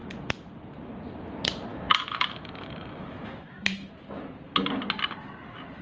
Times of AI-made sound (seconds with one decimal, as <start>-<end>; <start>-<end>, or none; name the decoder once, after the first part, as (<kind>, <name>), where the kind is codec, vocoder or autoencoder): 1.7-3.9 (autoencoder, DAC-VAE)

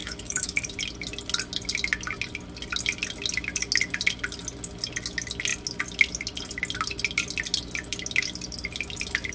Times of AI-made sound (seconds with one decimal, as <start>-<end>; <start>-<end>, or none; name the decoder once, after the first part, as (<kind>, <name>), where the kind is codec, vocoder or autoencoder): 0.0-0.7 (autoencoder, DAC-VAE)

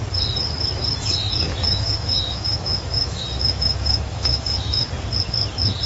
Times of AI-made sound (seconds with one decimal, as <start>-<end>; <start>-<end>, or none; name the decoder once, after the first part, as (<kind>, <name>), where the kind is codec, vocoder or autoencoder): 1.5-4.9 (autoencoder, DAC-VAE)

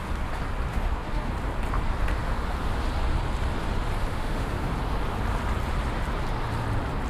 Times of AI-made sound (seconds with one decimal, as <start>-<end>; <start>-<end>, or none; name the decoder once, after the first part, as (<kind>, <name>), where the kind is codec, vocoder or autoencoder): 0.7-1.3 (autoencoder, DAC-VAE); 4.1-4.7

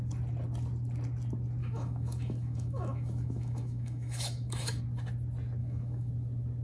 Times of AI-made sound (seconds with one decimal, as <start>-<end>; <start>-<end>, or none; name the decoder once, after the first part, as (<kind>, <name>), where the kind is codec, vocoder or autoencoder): 1.6-4.8 (autoencoder, DAC-VAE); 5.6-6.1

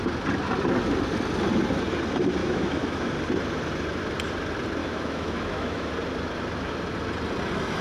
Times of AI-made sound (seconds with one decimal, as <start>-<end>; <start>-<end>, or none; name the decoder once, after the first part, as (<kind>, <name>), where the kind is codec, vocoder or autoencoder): 2.4-3.1 (autoencoder, DAC-VAE); 4.8-5.9